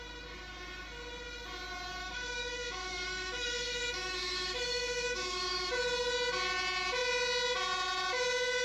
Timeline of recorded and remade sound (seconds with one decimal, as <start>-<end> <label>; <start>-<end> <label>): 0.0-2.0 recorded; 2.0-5.7 remade; 5.7-8.6 recorded